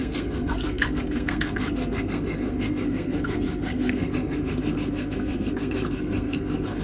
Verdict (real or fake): fake